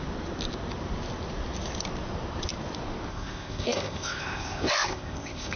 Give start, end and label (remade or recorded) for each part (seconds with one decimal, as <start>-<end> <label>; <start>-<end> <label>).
0.0-3.1 recorded; 3.1-5.6 remade

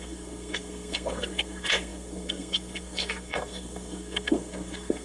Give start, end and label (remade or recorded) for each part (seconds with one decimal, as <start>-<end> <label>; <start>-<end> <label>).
0.0-5.0 remade

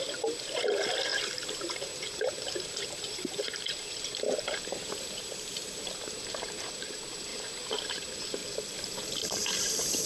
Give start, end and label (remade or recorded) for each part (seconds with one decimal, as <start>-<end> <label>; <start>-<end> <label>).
0.0-8.4 remade; 8.4-9.2 recorded; 9.2-10.1 remade

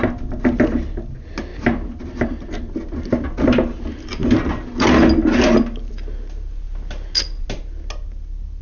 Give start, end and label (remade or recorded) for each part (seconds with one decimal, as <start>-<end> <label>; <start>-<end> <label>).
0.0-1.5 recorded; 1.5-2.1 remade; 2.1-8.6 recorded

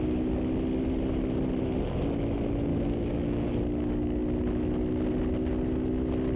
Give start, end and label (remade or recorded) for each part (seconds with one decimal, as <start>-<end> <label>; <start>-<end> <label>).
0.0-2.7 recorded; 2.7-3.5 remade; 3.5-6.4 recorded